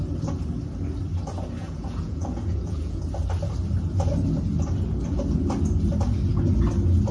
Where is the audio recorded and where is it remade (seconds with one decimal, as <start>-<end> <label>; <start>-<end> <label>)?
0.0-1.6 recorded; 1.6-3.0 remade; 3.0-7.1 recorded